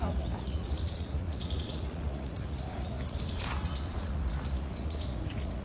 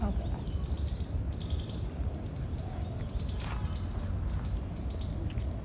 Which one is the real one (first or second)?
second